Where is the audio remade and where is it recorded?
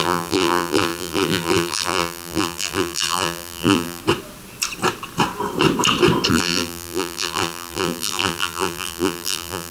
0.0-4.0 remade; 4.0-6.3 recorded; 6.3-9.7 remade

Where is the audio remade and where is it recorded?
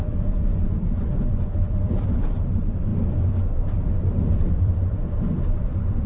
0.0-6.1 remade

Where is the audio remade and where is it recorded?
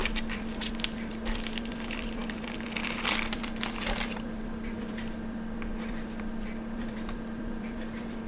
0.0-8.3 remade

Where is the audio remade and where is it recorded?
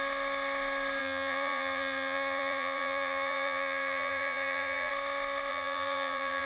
0.0-1.0 recorded; 1.0-4.9 remade; 4.9-5.5 recorded; 5.5-6.5 remade